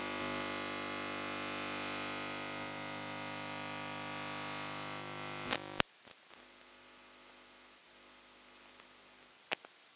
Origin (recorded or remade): recorded